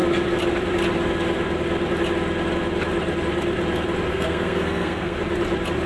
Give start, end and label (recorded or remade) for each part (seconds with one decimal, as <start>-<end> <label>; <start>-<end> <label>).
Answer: 0.0-4.1 recorded; 4.1-5.2 remade; 5.2-5.9 recorded

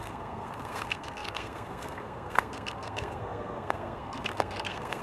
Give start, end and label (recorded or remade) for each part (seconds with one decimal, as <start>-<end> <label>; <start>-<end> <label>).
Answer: 0.0-5.0 remade

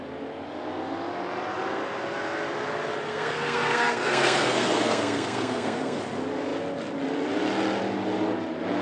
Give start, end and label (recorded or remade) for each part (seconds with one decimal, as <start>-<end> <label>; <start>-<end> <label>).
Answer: 0.0-3.1 recorded; 3.1-6.0 remade; 6.0-8.8 recorded